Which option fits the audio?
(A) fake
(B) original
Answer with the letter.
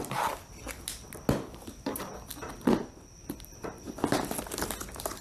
B